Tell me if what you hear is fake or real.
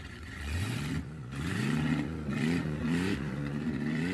fake